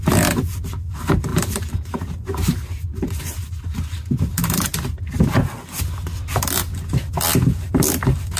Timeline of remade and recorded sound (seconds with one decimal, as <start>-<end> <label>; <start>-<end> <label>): 0.0-8.4 recorded